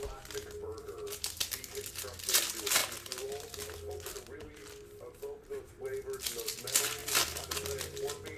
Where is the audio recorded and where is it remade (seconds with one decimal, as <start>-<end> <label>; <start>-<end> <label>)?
0.0-8.4 recorded